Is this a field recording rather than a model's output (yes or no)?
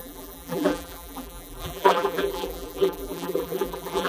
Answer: no